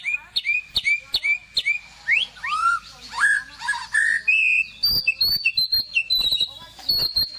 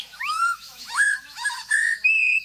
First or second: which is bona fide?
first